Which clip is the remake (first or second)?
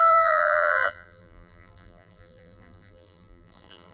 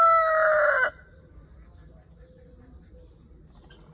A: first